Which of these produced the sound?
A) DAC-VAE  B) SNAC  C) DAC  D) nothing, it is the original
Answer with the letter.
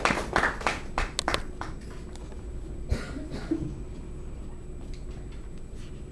D